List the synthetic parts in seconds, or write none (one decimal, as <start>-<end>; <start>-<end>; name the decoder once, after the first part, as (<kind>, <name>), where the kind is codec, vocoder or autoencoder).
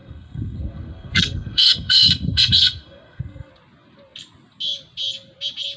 0.0-3.5 (codec, SNAC)